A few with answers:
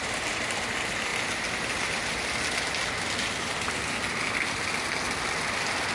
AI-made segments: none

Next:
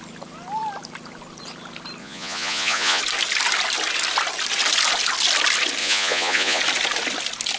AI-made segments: 2.0-3.0 (vocoder, Vocos); 5.8-6.6

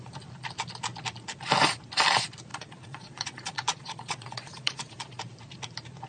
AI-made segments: 2.5-5.2 (vocoder, Vocos)

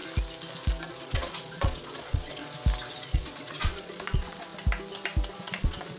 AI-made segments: 0.9-2.4 (vocoder, Vocos); 2.9-4.5; 5.3-6.0

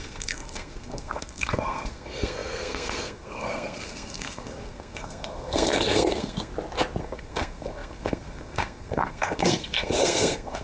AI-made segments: 0.0-6.5 (codec, SNAC); 7.0-10.6

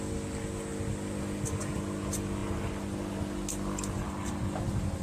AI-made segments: none

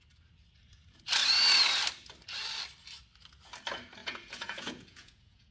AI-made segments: 4.0-5.5 (vocoder, Vocos)